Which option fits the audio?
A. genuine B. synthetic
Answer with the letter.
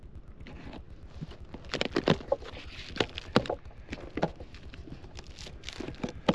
A